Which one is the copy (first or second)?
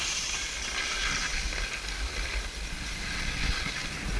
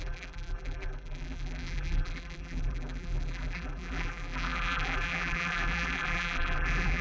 second